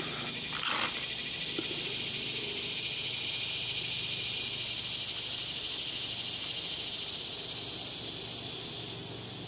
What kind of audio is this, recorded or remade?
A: recorded